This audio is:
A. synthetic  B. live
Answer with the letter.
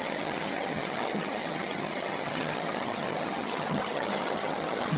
A